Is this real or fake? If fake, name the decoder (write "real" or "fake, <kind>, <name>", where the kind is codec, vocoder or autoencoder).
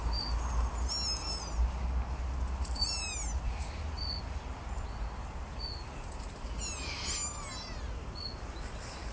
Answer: real